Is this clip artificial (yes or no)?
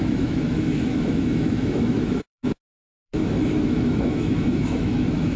yes